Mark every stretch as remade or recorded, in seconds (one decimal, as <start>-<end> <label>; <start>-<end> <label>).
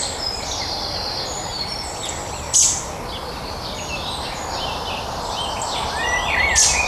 0.0-1.5 recorded; 1.5-2.1 remade; 2.1-6.9 recorded